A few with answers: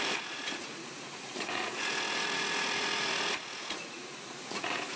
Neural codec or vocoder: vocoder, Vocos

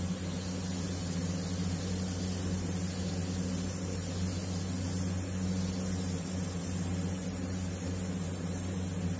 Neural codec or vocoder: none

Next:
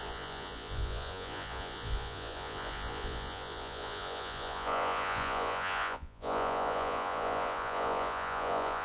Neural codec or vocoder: vocoder, Vocos